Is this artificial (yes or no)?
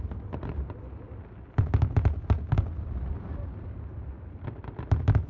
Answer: no